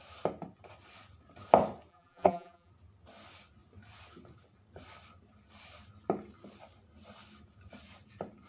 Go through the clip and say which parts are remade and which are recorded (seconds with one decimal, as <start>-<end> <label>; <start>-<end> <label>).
0.0-1.9 recorded; 1.9-2.7 remade; 2.7-8.5 recorded